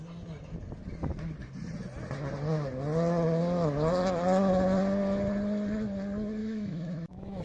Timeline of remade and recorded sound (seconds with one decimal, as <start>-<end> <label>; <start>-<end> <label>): 0.0-6.4 recorded; 6.4-7.4 remade